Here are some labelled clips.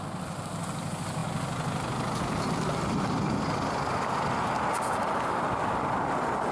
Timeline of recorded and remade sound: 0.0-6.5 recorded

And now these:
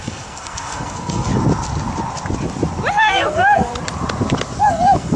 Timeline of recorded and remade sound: 0.0-1.3 remade; 1.3-2.9 recorded; 2.9-3.7 remade; 3.7-4.6 recorded; 4.6-5.2 remade

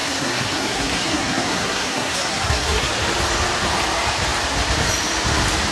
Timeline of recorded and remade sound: 0.0-2.9 remade; 2.9-5.7 recorded

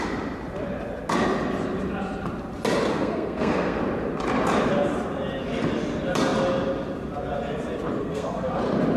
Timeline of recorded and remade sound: 0.0-2.9 recorded; 2.9-3.8 remade; 3.8-8.0 recorded; 8.0-8.6 remade; 8.6-9.0 recorded

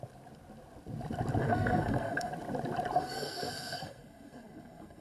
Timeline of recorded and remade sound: 0.0-1.4 recorded; 1.4-2.3 remade; 2.3-3.0 recorded; 3.0-5.0 remade

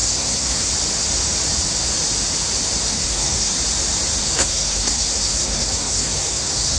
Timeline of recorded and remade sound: 0.0-0.7 remade; 0.7-2.9 recorded; 2.9-3.5 remade; 3.5-4.2 recorded; 4.2-6.8 remade